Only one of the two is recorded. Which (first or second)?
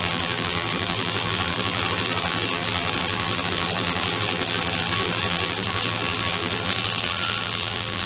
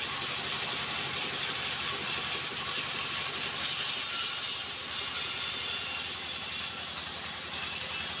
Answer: second